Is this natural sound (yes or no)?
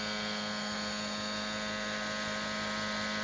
yes